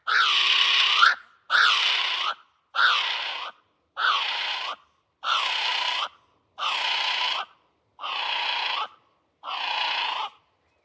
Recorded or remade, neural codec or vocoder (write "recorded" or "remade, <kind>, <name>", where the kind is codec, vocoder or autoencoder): recorded